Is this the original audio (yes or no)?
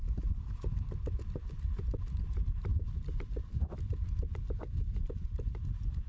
yes